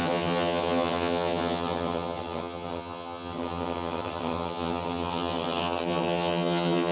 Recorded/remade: remade